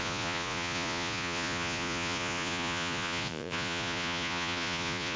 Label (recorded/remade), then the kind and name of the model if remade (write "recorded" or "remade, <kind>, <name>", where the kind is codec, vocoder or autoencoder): remade, vocoder, Vocos